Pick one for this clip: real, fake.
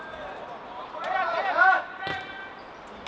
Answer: fake